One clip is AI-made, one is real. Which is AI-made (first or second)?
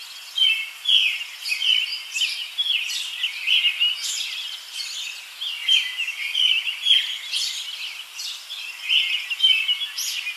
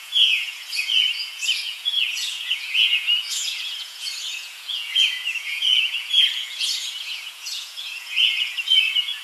second